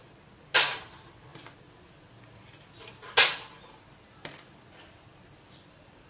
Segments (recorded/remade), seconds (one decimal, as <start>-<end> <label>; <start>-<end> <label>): 0.0-6.1 recorded